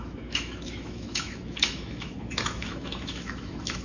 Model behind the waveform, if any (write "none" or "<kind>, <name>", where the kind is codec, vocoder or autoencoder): autoencoder, DAC-VAE